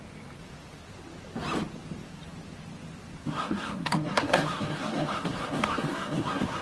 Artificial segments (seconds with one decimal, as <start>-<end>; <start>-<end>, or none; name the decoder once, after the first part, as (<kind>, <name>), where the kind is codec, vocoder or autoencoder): 3.2-6.6 (codec, SNAC)